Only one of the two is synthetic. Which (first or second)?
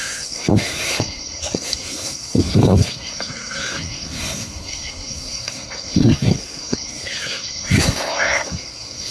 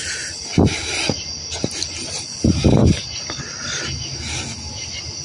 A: first